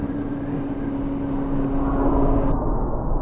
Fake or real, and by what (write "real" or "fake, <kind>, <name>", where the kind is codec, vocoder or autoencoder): real